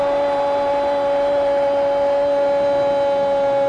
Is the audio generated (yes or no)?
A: no